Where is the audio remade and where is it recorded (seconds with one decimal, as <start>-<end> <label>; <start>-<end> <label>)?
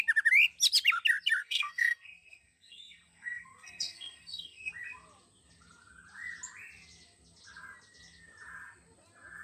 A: 0.0-1.4 recorded; 1.4-4.7 remade; 4.7-9.4 recorded